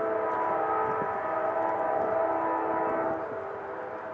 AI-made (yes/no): no